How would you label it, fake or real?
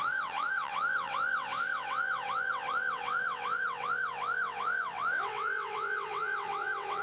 fake